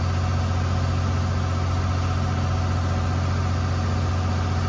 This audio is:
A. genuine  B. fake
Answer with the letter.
A